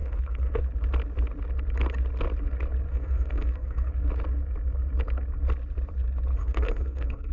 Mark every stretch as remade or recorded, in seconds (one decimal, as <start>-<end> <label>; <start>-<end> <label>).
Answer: 0.0-0.6 remade; 0.6-2.9 recorded; 2.9-3.9 remade; 3.9-6.4 recorded; 6.4-7.3 remade

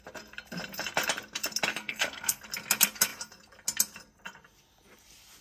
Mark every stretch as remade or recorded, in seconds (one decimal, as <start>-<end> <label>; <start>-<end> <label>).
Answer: 0.0-1.7 recorded; 1.7-2.4 remade; 2.4-5.4 recorded